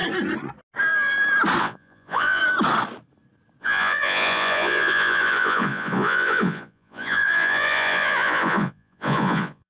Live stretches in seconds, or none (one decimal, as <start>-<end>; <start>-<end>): 0.0-1.6; 2.4-3.6